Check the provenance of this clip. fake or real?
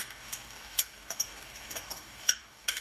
fake